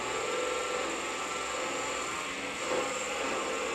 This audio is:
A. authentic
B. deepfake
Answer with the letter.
A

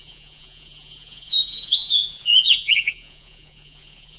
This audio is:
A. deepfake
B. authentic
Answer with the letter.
A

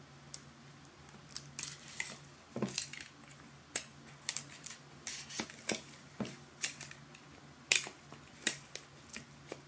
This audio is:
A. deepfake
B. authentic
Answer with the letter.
B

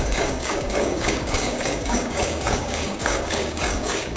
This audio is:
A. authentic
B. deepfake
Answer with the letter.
B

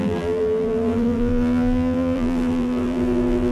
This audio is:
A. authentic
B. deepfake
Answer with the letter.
B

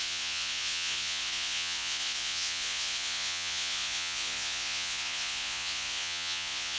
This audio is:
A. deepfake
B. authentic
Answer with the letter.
A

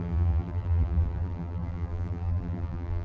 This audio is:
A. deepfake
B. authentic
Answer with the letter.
A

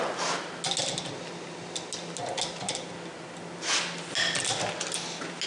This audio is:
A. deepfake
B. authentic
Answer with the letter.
B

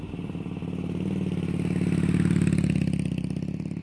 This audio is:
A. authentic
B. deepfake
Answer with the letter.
A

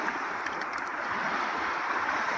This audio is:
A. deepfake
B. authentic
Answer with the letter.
B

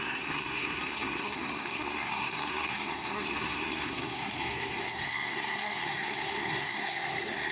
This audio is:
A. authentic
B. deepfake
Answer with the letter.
B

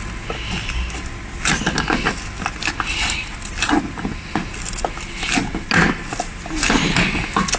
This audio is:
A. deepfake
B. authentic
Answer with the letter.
B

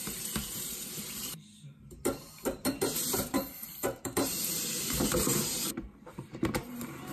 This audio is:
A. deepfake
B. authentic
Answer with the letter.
A